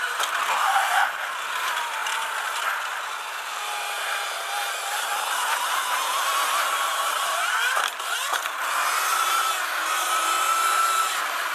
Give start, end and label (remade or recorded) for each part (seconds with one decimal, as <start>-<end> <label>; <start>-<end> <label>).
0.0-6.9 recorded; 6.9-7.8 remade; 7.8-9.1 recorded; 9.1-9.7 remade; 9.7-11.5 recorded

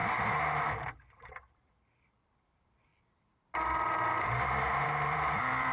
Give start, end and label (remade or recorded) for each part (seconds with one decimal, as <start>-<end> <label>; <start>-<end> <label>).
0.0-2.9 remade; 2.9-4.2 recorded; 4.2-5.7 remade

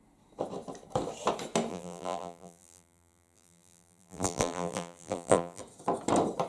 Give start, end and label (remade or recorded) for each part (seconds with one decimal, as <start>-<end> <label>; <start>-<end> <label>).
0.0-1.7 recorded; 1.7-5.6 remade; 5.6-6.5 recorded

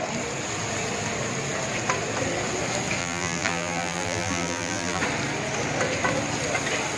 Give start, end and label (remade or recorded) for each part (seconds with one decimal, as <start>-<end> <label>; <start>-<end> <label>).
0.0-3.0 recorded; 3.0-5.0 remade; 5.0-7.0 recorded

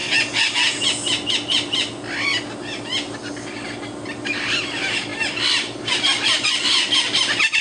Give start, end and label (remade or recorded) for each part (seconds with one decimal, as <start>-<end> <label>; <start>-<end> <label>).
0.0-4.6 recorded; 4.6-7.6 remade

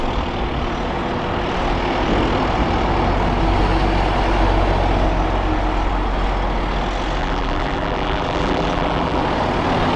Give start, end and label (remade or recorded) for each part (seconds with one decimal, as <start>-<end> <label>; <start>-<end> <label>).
0.0-7.2 recorded; 7.2-9.2 remade; 9.2-10.0 recorded

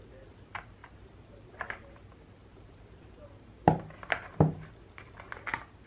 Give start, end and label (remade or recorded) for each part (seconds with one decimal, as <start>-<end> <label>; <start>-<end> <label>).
0.0-0.8 recorded; 0.8-4.3 remade; 4.3-5.9 recorded

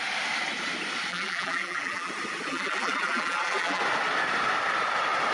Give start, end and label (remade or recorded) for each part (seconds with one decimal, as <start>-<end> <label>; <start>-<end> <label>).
0.0-1.1 recorded; 1.1-2.1 remade; 2.1-2.5 recorded; 2.5-3.8 remade; 3.8-5.3 recorded